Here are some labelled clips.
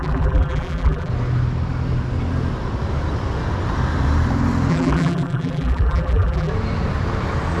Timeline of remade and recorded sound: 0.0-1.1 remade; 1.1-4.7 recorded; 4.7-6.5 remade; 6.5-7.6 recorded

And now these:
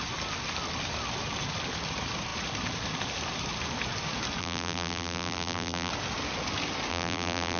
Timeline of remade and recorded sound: 0.0-4.4 recorded; 4.4-5.9 remade; 5.9-6.9 recorded; 6.9-7.6 remade

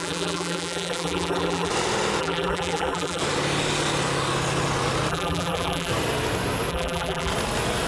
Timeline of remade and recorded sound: 0.0-1.7 remade; 1.7-2.2 recorded; 2.2-3.2 remade; 3.2-5.1 recorded; 5.1-5.9 remade; 5.9-6.7 recorded; 6.7-7.3 remade; 7.3-7.9 recorded

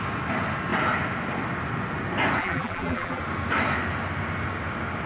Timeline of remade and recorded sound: 0.0-2.4 recorded; 2.4-3.2 remade; 3.2-5.1 recorded